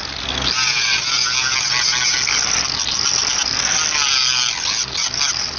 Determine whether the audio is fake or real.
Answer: real